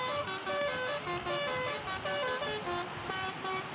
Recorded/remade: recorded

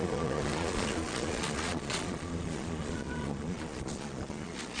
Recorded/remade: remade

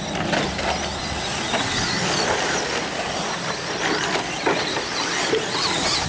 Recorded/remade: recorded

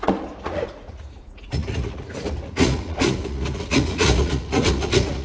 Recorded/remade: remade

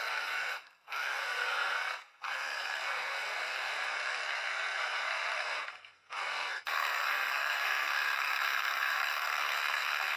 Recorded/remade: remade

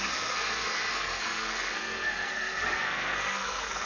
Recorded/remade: remade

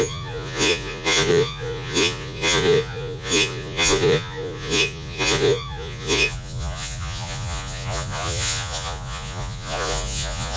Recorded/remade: remade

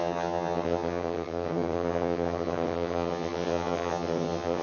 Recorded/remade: remade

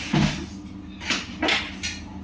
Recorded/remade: recorded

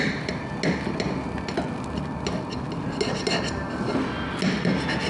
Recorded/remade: recorded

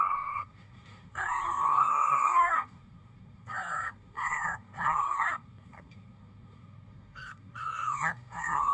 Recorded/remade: remade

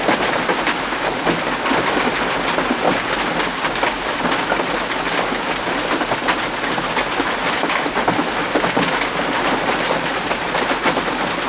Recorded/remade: recorded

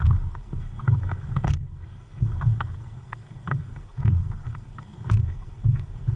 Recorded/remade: remade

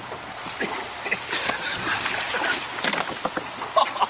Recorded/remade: recorded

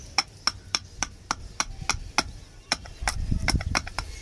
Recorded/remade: recorded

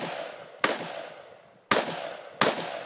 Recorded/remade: recorded